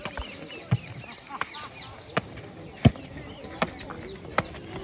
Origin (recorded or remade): recorded